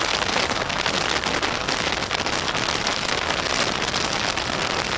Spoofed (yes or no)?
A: no